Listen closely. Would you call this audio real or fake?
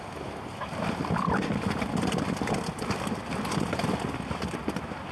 real